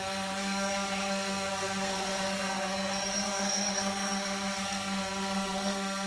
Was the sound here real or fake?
fake